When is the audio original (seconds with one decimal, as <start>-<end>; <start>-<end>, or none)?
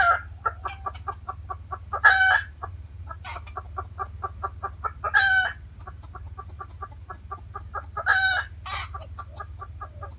0.0-10.2